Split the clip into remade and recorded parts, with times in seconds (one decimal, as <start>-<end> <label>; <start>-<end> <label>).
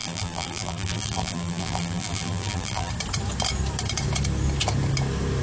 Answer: 0.0-2.9 remade; 2.9-5.4 recorded